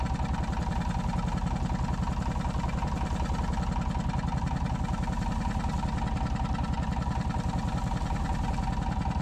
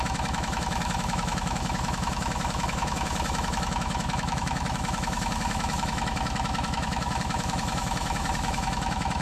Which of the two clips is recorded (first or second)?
first